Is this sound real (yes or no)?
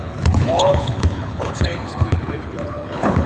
no